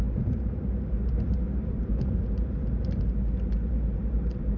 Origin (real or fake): fake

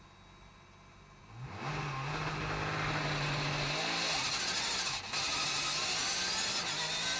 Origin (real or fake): real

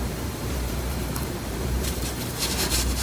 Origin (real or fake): fake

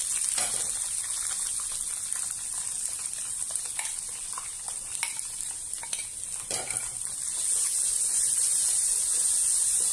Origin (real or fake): real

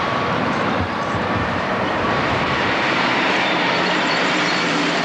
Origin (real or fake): fake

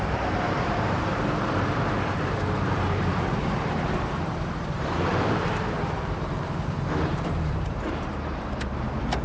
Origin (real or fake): fake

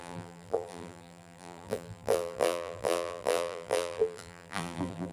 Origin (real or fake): fake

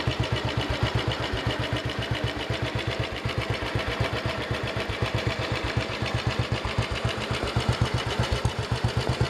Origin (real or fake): fake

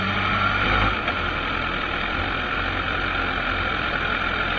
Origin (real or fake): fake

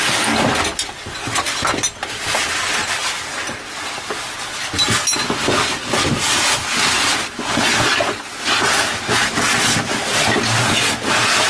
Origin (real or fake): real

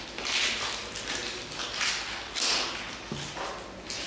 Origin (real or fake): real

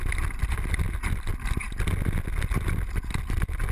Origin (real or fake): real